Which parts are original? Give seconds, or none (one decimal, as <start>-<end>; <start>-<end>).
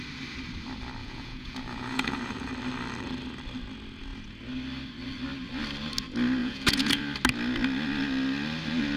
0.0-1.0; 2.5-6.4; 7.0-9.0